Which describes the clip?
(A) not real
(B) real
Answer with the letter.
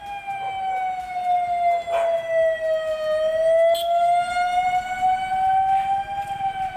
B